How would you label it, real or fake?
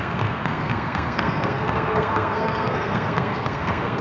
fake